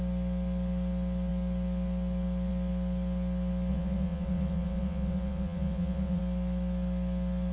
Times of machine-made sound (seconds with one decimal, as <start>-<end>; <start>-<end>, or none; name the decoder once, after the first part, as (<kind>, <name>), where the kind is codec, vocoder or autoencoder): 3.7-6.2 (vocoder, WaveNeXt)